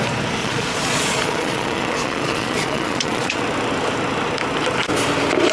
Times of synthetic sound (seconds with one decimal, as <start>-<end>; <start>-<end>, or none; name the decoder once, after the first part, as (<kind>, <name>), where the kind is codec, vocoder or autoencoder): 0.4-3.4 (vocoder, Vocos)